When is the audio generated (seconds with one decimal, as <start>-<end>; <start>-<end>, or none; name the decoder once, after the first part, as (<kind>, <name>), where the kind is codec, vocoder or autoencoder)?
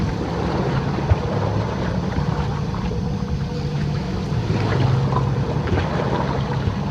3.7-4.2 (autoencoder, DAC-VAE)